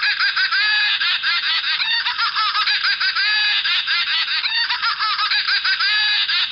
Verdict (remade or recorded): recorded